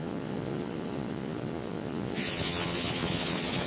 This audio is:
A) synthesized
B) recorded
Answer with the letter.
A